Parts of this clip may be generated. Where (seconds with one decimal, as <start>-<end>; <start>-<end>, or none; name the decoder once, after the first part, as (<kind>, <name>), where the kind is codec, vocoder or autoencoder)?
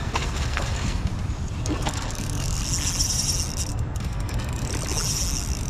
0.0-1.1 (codec, SNAC); 1.6-2.6; 3.7-4.7